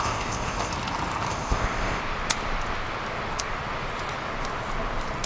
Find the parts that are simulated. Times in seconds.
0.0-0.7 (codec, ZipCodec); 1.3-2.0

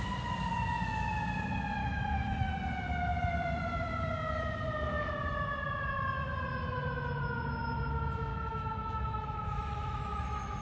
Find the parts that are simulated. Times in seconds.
1.8-2.5 (autoencoder, DAC-VAE); 8.3-10.6

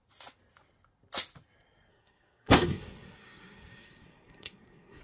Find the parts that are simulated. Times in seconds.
1.9-5.0 (codec, SNAC)